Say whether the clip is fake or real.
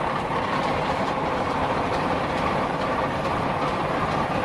fake